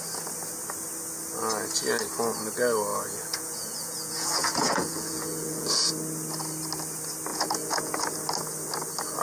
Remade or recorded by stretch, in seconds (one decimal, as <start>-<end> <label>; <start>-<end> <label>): 0.0-2.9 recorded; 2.9-5.9 remade; 5.9-7.3 recorded; 7.3-7.9 remade; 7.9-9.2 recorded

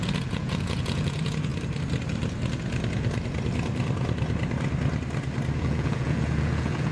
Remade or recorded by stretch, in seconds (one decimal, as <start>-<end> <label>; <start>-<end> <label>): 0.0-1.5 remade; 1.5-5.6 recorded; 5.6-6.9 remade